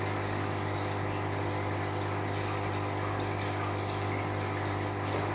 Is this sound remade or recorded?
recorded